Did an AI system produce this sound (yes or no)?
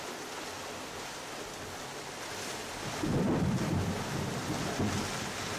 yes